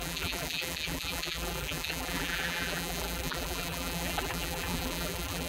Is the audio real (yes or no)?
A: no